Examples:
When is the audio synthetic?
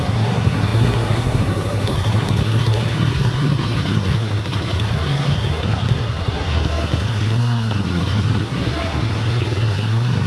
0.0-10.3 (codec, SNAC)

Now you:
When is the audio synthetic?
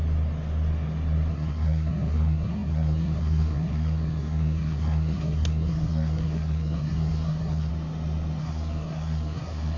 1.3-7.7 (codec, SNAC); 8.4-9.8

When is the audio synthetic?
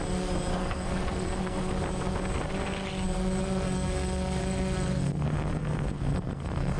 0.5-1.7 (codec, SNAC); 3.4-6.8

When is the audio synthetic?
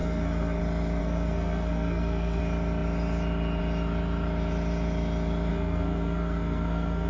0.0-0.6 (codec, SNAC); 1.0-2.4; 5.5-7.1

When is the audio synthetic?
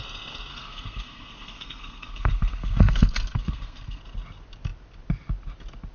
0.5-4.0 (codec, SNAC)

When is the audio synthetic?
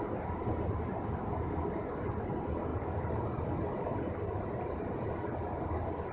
none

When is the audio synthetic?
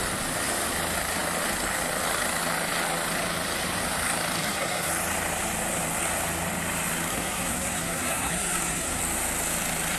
4.4-4.9 (codec, SNAC); 7.1-9.0